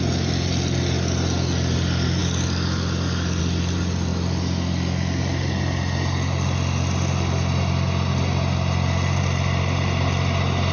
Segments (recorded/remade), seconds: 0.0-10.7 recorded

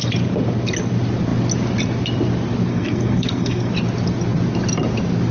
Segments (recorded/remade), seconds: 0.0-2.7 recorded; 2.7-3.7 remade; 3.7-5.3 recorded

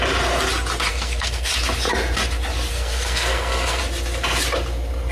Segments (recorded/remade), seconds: 0.0-0.9 recorded; 0.9-1.5 remade; 1.5-2.7 recorded; 2.7-3.8 remade; 3.8-5.1 recorded

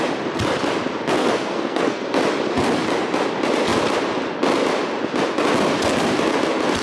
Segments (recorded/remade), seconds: 0.0-1.2 recorded; 1.2-2.2 remade; 2.2-6.8 recorded